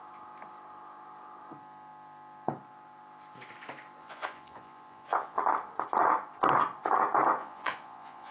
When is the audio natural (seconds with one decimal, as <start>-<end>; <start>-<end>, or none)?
0.0-4.0; 5.4-7.4